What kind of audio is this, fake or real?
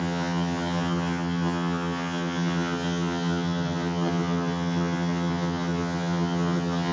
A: fake